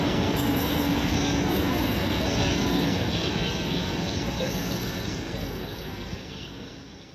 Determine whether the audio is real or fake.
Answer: fake